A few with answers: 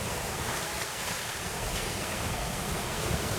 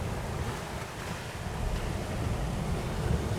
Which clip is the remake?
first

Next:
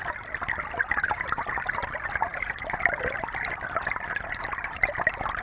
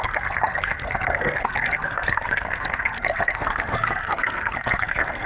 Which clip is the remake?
second